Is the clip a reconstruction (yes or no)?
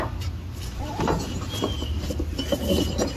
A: no